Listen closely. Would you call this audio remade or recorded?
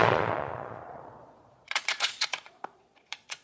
remade